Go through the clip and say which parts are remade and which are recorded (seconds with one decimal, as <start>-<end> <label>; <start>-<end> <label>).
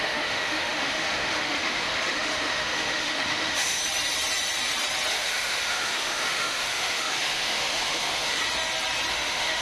0.0-3.8 remade; 3.8-5.1 recorded; 5.1-8.4 remade; 8.4-9.1 recorded; 9.1-9.6 remade